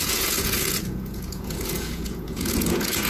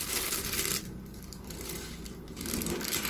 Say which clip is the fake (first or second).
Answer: first